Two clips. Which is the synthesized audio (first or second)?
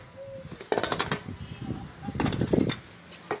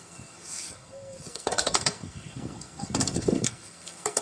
second